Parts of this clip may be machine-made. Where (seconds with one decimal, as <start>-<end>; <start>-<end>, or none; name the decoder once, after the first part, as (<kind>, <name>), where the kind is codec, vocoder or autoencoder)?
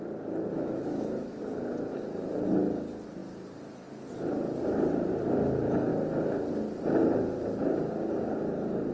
0.5-1.4 (autoencoder, DAC-VAE)